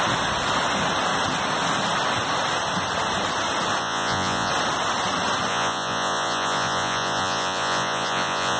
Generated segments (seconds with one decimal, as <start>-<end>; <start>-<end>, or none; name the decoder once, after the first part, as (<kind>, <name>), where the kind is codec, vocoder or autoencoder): 3.8-4.5 (vocoder, Vocos); 5.5-8.6